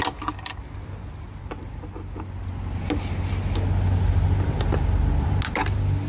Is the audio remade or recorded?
recorded